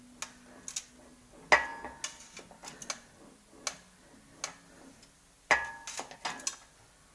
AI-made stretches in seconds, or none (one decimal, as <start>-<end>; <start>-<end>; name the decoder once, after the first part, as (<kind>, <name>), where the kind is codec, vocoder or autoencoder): none